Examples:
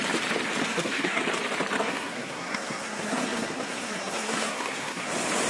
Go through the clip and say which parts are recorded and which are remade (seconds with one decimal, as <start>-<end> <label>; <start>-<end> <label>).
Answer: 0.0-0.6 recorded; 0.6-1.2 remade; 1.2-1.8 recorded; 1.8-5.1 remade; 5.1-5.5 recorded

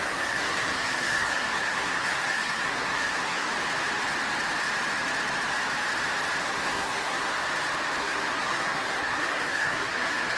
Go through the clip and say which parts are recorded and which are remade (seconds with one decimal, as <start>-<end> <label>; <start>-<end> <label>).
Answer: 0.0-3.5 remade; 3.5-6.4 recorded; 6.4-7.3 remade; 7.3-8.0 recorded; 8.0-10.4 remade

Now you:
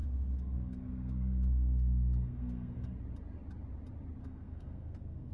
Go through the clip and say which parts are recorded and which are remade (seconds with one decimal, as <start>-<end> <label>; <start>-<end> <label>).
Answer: 0.0-2.9 remade; 2.9-4.2 recorded; 4.2-5.3 remade

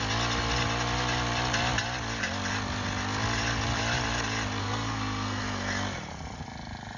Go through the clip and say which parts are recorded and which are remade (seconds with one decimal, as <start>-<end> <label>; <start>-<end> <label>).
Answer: 0.0-4.6 recorded; 4.6-5.4 remade; 5.4-7.0 recorded

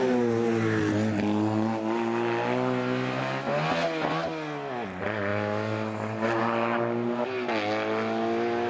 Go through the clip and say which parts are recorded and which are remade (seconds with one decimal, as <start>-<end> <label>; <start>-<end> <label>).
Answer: 0.0-8.7 recorded